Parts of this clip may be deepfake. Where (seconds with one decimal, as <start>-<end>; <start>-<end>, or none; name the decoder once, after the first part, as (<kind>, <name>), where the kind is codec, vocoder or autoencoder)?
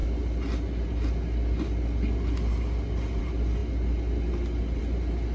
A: none